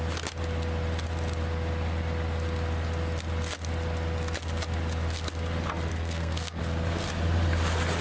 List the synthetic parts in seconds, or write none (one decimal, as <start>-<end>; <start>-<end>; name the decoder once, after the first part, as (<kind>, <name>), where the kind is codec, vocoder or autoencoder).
5.9-6.6 (codec, SNAC)